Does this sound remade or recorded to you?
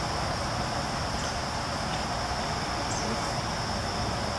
recorded